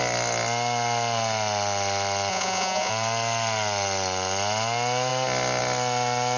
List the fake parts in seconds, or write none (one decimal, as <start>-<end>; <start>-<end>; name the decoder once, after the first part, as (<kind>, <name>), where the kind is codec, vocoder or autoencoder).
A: 2.3-2.9 (vocoder, Vocos)